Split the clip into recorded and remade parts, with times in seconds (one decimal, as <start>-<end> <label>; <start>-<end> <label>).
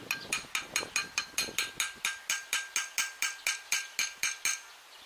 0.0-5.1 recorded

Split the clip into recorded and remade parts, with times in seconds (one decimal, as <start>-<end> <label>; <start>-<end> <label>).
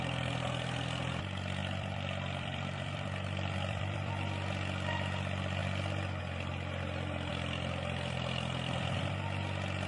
0.0-1.6 recorded; 1.6-4.1 remade; 4.1-5.6 recorded; 5.6-6.2 remade; 6.2-9.9 recorded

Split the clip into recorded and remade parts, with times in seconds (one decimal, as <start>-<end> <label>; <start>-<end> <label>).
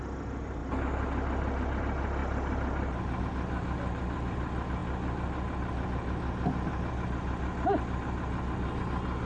0.0-9.3 recorded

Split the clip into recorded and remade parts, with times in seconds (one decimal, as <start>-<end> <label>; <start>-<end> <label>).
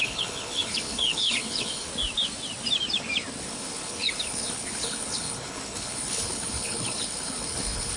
0.0-1.9 remade; 1.9-3.4 recorded; 3.4-8.0 remade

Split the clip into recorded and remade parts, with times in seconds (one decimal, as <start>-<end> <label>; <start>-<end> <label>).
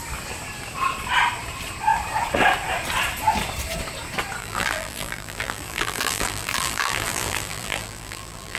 0.0-4.4 recorded; 4.4-8.6 remade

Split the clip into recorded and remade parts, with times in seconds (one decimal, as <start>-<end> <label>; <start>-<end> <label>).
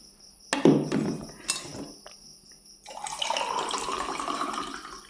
0.0-5.1 recorded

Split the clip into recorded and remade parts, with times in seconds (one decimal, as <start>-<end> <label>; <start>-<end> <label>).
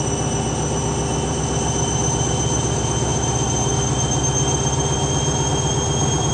0.0-6.3 recorded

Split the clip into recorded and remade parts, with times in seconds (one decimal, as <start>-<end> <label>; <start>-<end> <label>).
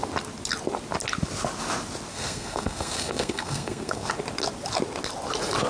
0.0-2.1 recorded; 2.1-4.1 remade; 4.1-5.7 recorded